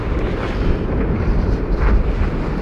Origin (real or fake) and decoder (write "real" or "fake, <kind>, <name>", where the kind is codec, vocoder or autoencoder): real